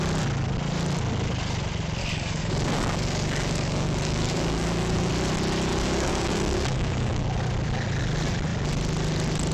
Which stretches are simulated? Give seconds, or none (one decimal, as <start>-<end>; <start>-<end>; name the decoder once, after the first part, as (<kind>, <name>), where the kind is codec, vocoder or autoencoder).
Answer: 2.0-5.1 (codec, DAC); 5.7-7.2